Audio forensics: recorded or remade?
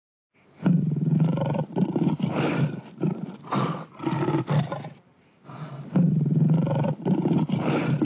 recorded